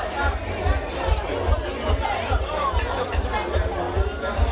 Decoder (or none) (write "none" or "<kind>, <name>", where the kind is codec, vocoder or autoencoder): none